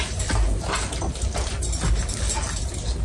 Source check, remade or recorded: recorded